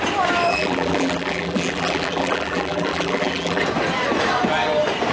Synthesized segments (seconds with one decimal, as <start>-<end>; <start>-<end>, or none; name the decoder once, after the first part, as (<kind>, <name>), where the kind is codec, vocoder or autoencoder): 0.5-3.6 (vocoder, BigVGAN v2)